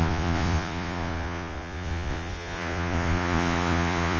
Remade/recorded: remade